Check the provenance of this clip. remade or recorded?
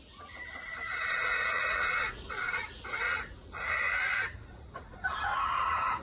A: remade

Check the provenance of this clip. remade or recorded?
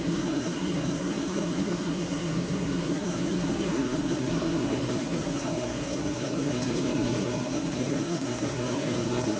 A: remade